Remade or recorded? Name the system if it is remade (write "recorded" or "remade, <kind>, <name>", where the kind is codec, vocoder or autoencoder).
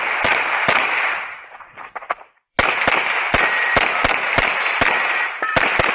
remade, vocoder, BigVGAN v2